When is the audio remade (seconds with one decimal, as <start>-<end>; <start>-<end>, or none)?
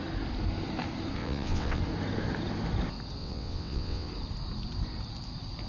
1.2-1.8; 3.2-4.1